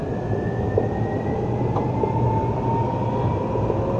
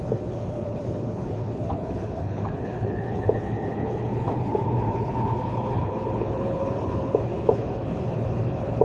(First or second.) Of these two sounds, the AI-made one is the second